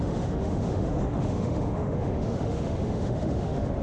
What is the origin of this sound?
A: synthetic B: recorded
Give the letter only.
A